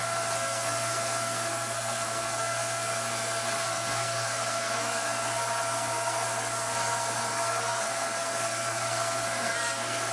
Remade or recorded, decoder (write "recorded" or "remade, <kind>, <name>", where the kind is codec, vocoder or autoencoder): remade, codec, SNAC